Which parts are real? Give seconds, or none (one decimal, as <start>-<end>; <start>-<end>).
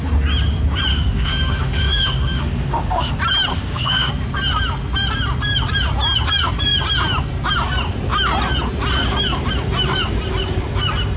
0.0-0.9; 3.1-3.5; 4.1-11.2